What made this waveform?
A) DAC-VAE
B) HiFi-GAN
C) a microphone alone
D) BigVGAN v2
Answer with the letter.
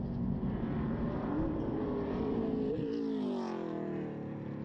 C